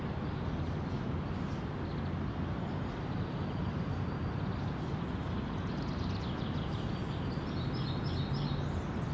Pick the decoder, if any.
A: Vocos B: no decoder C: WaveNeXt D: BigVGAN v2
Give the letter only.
B